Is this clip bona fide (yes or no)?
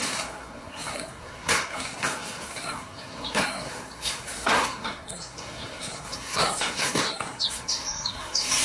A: no